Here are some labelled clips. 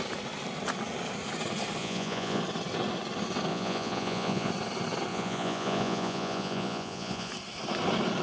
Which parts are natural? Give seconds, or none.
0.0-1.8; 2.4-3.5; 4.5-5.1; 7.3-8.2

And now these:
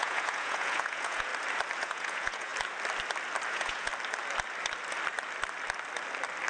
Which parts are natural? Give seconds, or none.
1.3-1.8; 2.5-3.5; 3.9-6.5

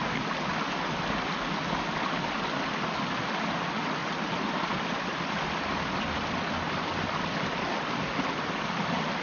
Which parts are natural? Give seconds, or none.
0.0-9.2